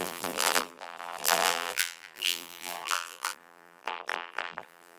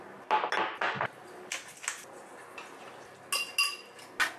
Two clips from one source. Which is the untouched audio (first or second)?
second